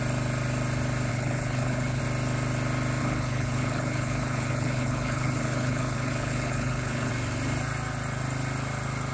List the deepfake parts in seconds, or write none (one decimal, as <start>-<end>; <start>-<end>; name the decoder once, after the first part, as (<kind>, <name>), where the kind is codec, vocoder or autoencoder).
1.1-2.0 (codec, HILCodec); 3.0-7.1